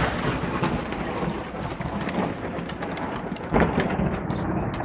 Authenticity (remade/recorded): recorded